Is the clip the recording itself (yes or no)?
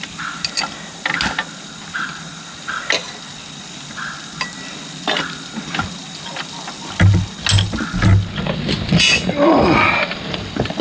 yes